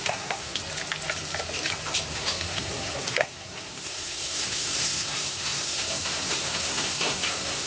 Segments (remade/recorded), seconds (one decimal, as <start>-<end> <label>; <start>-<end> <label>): 0.0-0.6 remade; 0.6-2.1 recorded; 2.1-7.7 remade